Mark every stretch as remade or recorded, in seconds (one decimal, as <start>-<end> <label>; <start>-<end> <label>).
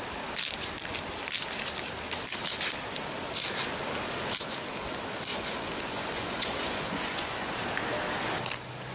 0.0-5.3 recorded; 5.3-7.5 remade; 7.5-8.9 recorded